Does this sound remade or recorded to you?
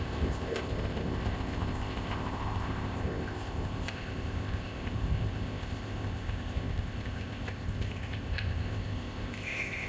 remade